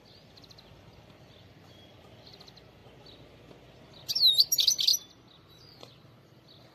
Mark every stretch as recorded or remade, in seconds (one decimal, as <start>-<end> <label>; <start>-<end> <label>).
0.0-2.8 remade; 2.8-4.3 recorded; 4.3-4.9 remade; 4.9-5.5 recorded; 5.5-6.7 remade

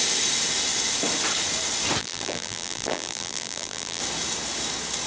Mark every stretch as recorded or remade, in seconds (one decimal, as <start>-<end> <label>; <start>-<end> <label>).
0.0-2.0 recorded; 2.0-4.0 remade; 4.0-5.1 recorded